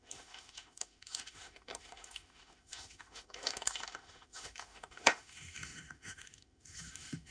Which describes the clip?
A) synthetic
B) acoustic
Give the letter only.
A